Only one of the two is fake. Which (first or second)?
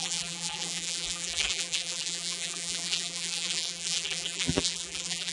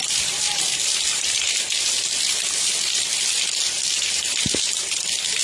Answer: first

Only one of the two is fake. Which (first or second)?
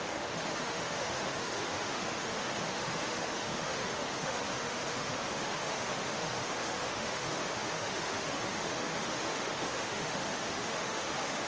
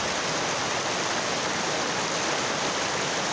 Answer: first